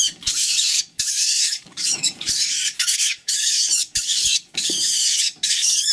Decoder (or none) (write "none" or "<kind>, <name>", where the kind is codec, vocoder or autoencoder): codec, DAC